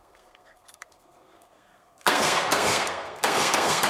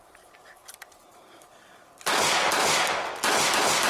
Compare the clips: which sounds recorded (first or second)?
second